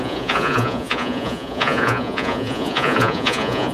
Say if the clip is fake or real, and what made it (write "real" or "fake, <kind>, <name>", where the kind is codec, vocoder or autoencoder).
fake, vocoder, Vocos